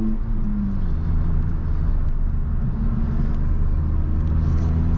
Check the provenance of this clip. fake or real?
real